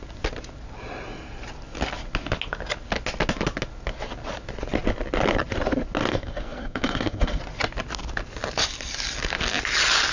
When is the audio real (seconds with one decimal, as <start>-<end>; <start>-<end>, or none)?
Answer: 0.0-6.1; 7.4-10.1